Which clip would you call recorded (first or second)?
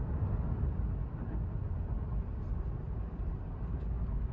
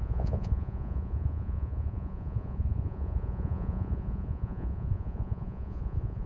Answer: first